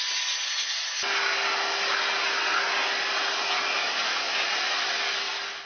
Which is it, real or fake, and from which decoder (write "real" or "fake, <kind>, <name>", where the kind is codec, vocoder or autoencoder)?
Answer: real